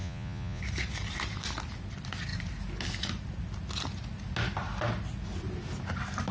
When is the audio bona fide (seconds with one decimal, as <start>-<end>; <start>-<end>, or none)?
0.6-6.3